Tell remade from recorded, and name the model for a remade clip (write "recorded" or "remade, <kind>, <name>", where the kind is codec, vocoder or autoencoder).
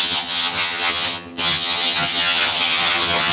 remade, vocoder, HiFi-GAN